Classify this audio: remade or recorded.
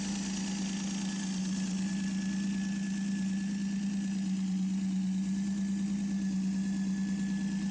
recorded